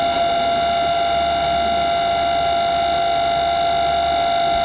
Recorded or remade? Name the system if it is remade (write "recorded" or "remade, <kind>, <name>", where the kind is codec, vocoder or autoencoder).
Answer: recorded